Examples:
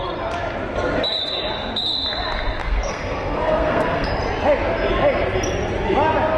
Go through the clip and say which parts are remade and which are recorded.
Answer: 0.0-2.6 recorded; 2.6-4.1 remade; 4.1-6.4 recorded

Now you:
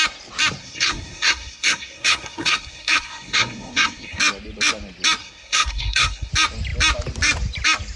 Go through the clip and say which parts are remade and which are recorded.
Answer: 0.0-0.6 recorded; 0.6-4.2 remade; 4.2-5.2 recorded; 5.2-6.3 remade; 6.3-8.0 recorded

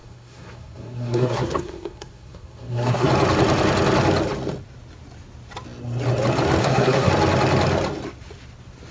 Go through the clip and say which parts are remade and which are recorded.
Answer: 0.0-3.1 remade; 3.1-6.6 recorded; 6.6-7.1 remade; 7.1-8.9 recorded

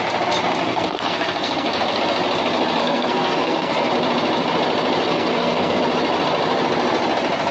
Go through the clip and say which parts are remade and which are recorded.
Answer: 0.0-0.6 recorded; 0.6-2.0 remade; 2.0-2.8 recorded; 2.8-3.9 remade; 3.9-5.1 recorded; 5.1-5.8 remade; 5.8-7.5 recorded

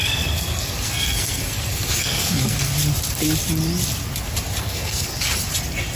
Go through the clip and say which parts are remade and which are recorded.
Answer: 0.0-2.7 remade; 2.7-4.6 recorded; 4.6-5.1 remade; 5.1-6.0 recorded

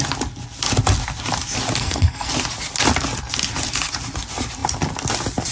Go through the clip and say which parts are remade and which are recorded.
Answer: 0.0-1.8 recorded; 1.8-2.3 remade; 2.3-5.5 recorded

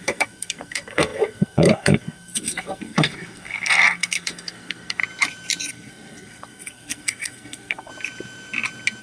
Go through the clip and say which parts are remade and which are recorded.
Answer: 0.0-5.0 remade; 5.0-5.7 recorded; 5.7-7.9 remade; 7.9-9.0 recorded